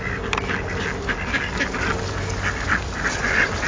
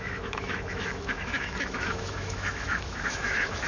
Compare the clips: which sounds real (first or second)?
first